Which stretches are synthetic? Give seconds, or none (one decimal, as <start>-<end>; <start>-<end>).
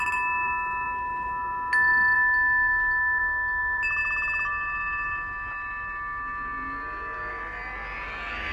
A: none